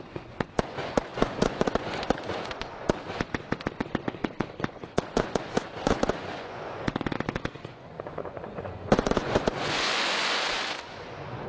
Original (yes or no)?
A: no